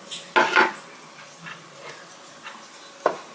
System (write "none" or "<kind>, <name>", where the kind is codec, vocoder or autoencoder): none